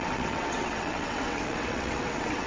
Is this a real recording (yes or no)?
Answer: no